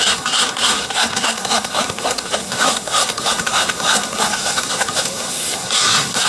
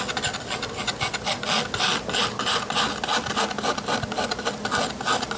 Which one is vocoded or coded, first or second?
first